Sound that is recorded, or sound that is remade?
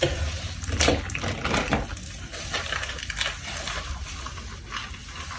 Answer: recorded